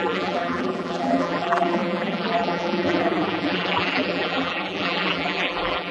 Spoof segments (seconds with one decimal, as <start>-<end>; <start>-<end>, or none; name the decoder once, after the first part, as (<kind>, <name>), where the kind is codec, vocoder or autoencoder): 0.0-5.9 (vocoder, BigVGAN v2)